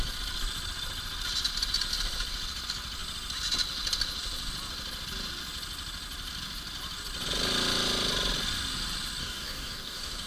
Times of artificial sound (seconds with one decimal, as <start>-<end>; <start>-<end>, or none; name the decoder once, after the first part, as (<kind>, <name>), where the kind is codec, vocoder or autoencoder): 9.2-10.3 (codec, DAC)